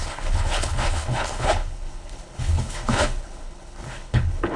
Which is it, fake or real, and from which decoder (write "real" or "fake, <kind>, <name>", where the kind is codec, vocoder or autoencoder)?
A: fake, codec, HILCodec